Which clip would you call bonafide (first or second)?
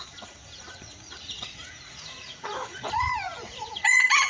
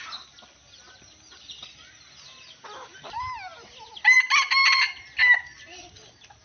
second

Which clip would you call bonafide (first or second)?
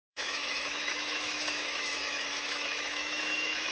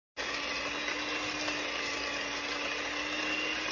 second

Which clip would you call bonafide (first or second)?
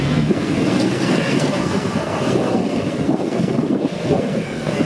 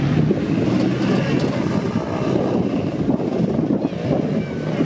second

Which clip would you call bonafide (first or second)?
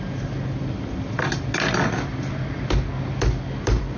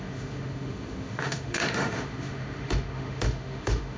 first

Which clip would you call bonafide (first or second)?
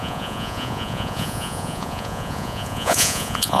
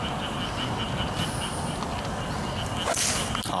second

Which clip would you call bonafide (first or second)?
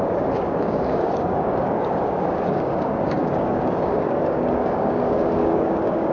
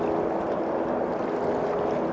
second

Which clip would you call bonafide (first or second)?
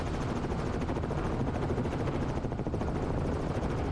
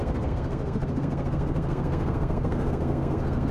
first